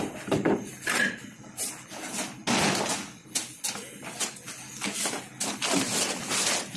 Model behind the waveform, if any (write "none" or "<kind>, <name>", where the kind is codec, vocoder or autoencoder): none